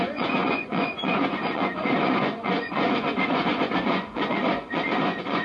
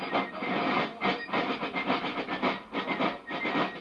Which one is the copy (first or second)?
first